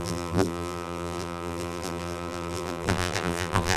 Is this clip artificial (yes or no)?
yes